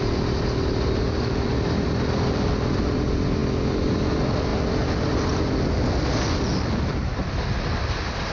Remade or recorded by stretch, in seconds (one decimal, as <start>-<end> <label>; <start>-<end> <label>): 0.0-8.3 recorded